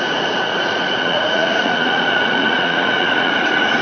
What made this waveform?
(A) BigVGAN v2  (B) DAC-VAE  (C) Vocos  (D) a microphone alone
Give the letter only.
C